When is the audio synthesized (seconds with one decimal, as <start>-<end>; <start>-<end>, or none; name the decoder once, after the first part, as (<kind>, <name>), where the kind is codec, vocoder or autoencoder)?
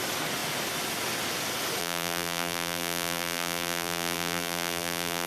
1.8-5.3 (vocoder, BigVGAN v2)